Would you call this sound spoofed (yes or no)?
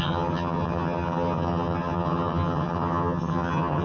yes